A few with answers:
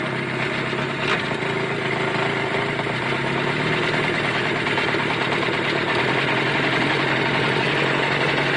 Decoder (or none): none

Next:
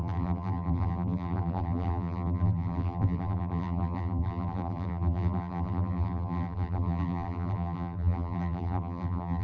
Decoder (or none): vocoder, BigVGAN v2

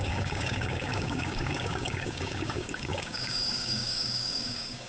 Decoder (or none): codec, DAC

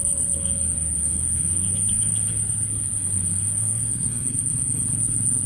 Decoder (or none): codec, SNAC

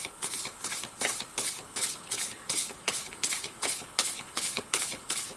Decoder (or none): codec, HILCodec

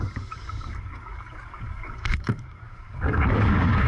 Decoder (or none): codec, DAC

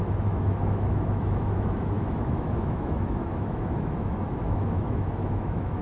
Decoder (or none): autoencoder, DAC-VAE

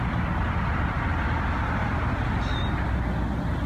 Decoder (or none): none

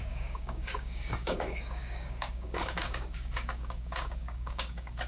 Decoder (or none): codec, DAC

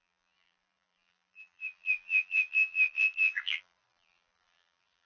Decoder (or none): vocoder, BigVGAN v2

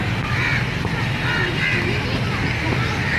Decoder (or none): none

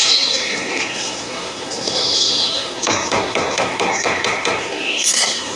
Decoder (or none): codec, SNAC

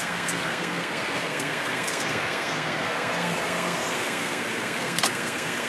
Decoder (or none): codec, SNAC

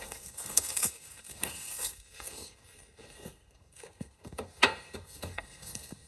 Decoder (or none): codec, SNAC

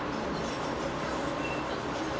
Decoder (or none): vocoder, BigVGAN v2